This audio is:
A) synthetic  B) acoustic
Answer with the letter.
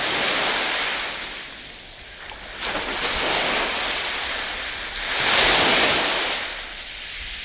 B